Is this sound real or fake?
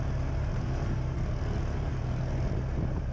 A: real